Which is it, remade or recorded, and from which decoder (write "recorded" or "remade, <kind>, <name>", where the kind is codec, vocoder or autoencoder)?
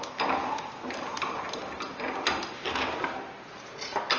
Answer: recorded